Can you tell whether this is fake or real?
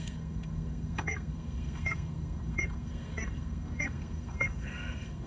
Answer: fake